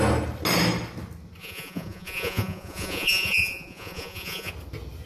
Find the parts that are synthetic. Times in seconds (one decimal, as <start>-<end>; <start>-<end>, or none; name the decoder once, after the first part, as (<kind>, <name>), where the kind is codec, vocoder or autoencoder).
1.4-4.5 (vocoder, Vocos)